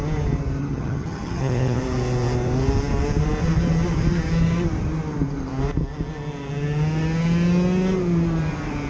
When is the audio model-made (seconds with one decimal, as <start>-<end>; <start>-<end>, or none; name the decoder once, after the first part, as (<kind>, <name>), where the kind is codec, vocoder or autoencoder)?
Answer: 0.6-1.8 (vocoder, HiFi-GAN)